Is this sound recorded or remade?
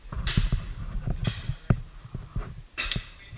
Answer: recorded